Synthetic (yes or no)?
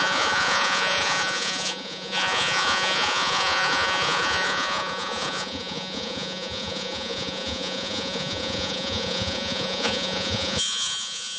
yes